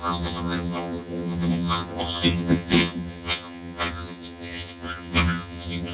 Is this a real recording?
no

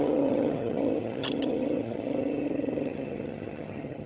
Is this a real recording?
no